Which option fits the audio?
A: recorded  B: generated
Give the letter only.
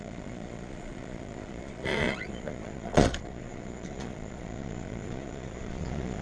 B